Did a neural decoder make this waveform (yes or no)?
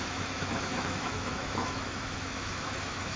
yes